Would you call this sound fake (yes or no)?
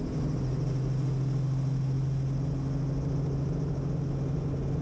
no